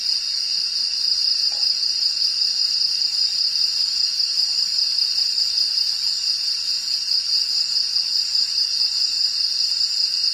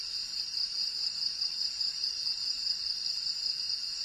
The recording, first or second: first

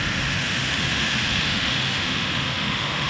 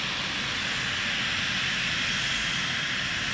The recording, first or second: second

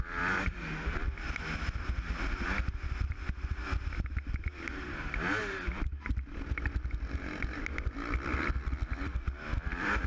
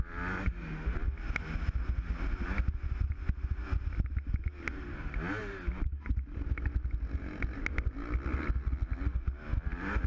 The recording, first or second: second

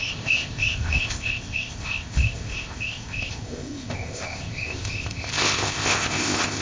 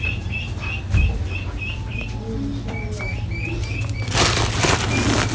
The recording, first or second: second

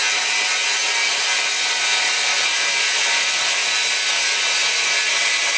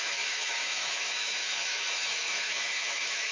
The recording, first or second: first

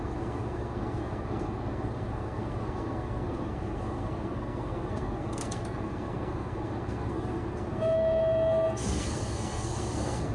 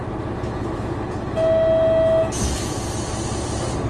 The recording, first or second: second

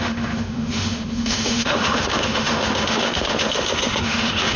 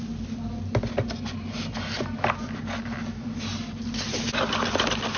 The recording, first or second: second